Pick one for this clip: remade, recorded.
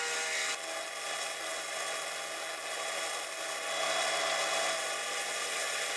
recorded